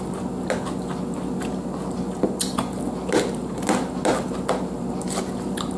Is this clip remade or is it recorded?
recorded